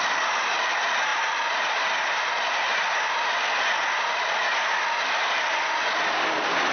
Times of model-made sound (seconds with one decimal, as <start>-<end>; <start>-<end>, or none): none